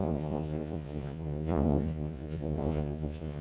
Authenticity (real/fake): fake